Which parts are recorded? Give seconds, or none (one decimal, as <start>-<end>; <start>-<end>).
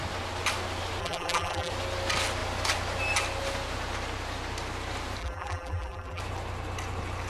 0.0-1.0; 1.7-5.2; 6.2-7.3